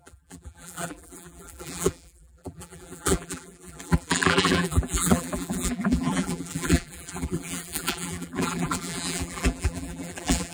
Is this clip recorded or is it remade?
remade